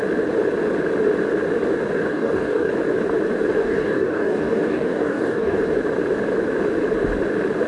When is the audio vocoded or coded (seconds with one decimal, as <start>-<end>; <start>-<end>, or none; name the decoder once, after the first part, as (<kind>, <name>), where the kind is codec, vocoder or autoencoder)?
2.1-2.7 (codec, DAC); 3.6-5.6